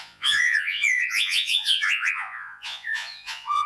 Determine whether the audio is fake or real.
fake